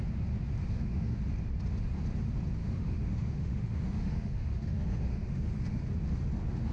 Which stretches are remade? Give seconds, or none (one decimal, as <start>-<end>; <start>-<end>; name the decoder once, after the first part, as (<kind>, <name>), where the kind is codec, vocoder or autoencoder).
0.6-1.2 (autoencoder, DAC-VAE); 2.6-5.8